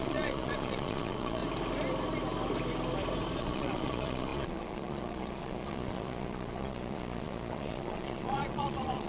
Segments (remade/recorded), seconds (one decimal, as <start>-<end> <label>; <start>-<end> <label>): 0.0-1.4 remade; 1.4-3.4 recorded; 3.4-9.1 remade